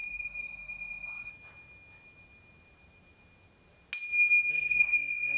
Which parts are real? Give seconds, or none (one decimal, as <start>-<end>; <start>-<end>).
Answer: 1.3-4.5